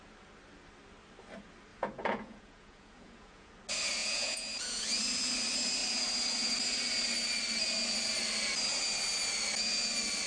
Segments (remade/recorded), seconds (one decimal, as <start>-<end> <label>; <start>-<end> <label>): 0.0-1.7 recorded; 1.7-3.5 remade; 3.5-4.0 recorded; 4.0-5.0 remade; 5.0-10.3 recorded